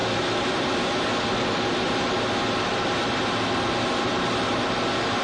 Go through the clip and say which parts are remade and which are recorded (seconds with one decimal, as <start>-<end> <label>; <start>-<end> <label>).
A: 0.0-5.2 recorded